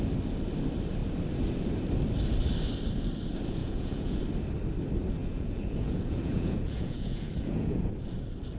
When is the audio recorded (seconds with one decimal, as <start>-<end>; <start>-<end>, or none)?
0.0-3.6; 4.2-5.2; 7.9-8.6